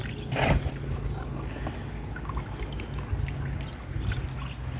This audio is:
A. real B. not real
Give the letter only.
A